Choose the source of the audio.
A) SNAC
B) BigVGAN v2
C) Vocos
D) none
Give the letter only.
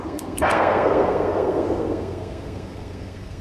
A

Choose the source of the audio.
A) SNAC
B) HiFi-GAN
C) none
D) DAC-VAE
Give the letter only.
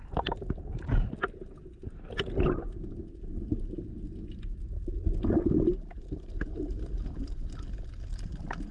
C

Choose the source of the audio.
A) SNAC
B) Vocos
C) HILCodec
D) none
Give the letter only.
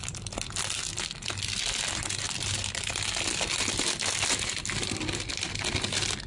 D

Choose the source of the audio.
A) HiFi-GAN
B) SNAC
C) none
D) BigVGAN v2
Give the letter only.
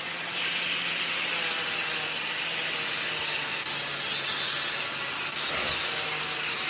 C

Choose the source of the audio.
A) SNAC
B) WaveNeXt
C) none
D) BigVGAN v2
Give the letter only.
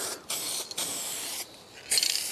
C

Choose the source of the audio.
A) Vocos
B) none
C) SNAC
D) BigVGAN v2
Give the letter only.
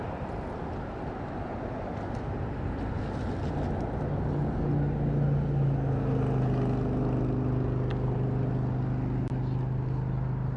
B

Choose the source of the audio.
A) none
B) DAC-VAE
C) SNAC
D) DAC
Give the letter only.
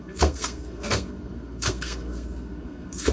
C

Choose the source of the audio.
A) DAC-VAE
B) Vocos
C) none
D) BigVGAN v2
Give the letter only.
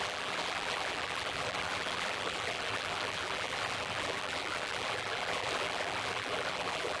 D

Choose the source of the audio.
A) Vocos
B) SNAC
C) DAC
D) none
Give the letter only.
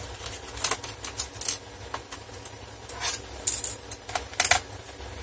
D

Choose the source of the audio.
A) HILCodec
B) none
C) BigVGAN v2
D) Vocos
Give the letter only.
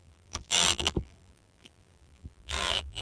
C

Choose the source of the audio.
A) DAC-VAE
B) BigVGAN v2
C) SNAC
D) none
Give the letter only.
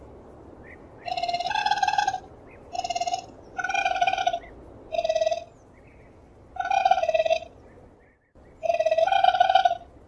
D